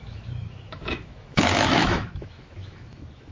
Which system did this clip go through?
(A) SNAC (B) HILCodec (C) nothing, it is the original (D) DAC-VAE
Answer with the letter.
D